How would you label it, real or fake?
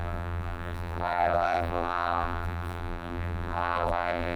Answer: fake